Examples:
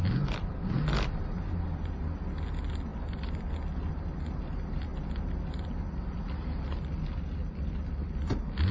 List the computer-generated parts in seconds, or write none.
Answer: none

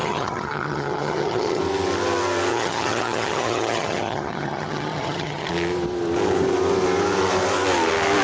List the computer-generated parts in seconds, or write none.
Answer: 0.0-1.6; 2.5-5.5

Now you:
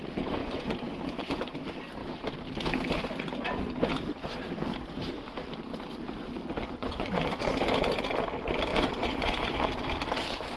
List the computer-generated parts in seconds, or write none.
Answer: 0.4-1.4; 6.8-7.4; 8.7-9.7

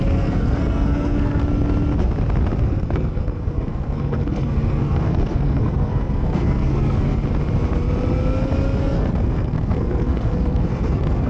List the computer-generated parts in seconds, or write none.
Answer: 0.0-1.4; 2.6-7.1; 8.8-11.3